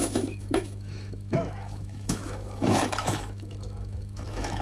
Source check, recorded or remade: remade